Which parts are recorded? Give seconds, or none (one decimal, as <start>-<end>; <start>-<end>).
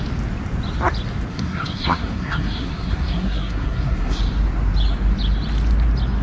0.0-1.3; 4.2-6.2